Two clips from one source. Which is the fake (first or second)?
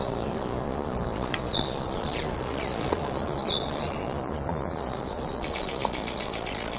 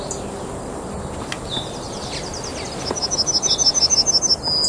first